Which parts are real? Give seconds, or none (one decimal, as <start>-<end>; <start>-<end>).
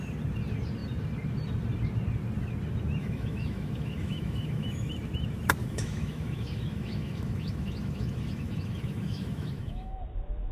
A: 0.0-3.0; 4.9-5.6; 10.0-10.5